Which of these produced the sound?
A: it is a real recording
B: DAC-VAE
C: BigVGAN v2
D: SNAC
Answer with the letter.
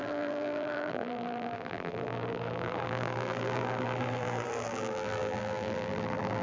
C